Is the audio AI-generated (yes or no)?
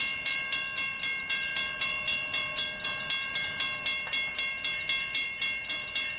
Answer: yes